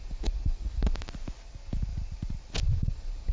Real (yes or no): yes